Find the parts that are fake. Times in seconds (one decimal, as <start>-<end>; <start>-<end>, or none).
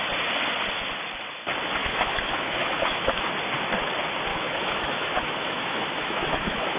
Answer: 1.8-3.3; 4.3-6.8